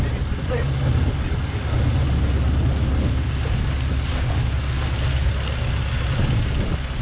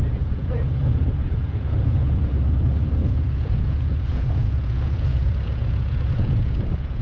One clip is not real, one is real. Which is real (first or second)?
first